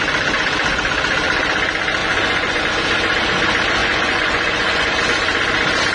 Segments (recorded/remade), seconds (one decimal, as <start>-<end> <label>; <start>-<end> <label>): 0.0-2.0 recorded; 2.0-2.6 remade; 2.6-3.8 recorded; 3.8-5.0 remade; 5.0-5.9 recorded